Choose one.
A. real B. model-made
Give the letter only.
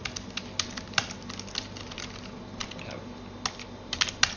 A